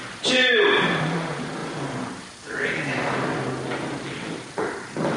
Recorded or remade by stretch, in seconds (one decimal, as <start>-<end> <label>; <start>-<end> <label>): 0.0-5.2 recorded